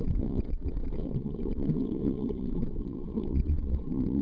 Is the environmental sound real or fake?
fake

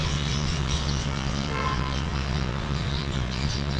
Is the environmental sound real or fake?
fake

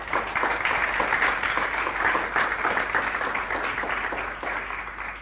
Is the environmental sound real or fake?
real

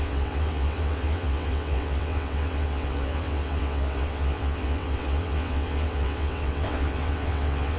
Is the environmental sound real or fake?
fake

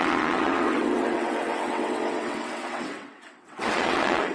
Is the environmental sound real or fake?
fake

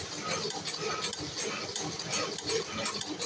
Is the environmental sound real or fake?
real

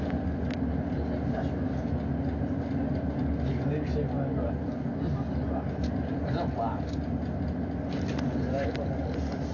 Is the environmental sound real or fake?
real